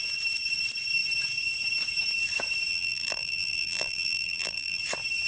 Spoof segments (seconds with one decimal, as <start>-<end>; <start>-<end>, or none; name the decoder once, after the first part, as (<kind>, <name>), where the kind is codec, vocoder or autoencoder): 2.7-4.8 (vocoder, BigVGAN v2)

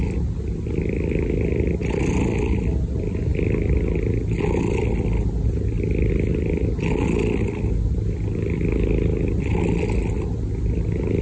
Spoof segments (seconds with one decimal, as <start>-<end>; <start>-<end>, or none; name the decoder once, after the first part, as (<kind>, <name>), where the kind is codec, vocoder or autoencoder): none

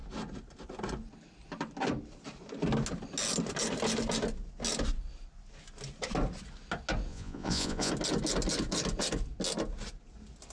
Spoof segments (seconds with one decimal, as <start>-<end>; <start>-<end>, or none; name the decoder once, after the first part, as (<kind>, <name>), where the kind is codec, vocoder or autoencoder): 7.1-7.9 (vocoder, Vocos)

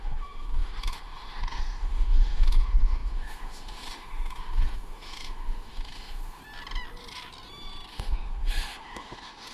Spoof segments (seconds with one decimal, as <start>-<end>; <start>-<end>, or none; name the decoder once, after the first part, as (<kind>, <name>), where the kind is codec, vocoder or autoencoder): 0.0-6.4 (autoencoder, DAC-VAE); 7.9-9.5